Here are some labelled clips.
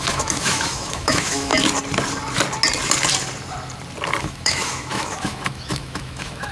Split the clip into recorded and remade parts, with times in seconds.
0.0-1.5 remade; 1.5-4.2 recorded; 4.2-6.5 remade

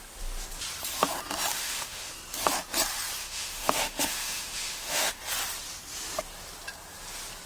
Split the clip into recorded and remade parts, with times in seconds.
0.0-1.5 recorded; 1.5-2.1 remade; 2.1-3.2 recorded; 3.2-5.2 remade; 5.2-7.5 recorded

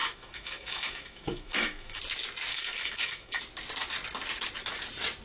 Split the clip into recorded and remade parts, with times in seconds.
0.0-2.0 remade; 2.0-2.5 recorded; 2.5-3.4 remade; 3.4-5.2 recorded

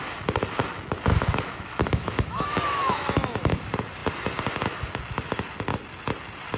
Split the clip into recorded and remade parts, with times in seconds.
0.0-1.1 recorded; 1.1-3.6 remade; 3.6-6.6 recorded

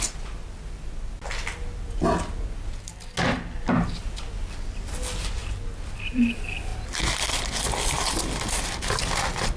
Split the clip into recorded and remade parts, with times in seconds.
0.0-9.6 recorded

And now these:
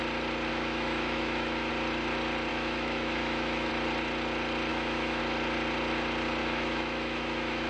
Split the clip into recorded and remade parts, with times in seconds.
0.0-0.5 recorded; 0.5-1.7 remade; 1.7-2.5 recorded; 2.5-3.7 remade; 3.7-4.7 recorded; 4.7-5.2 remade; 5.2-6.4 recorded; 6.4-7.7 remade